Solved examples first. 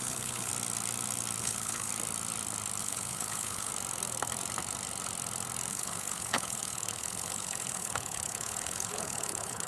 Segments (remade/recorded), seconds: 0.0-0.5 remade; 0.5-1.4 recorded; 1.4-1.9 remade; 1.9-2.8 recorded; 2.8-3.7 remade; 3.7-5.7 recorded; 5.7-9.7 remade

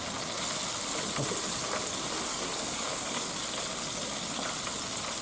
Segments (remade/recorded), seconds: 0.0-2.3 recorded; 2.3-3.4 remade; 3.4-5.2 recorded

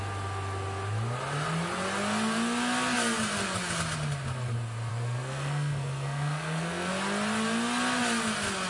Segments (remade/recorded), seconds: 0.0-4.9 recorded; 4.9-6.9 remade; 6.9-8.7 recorded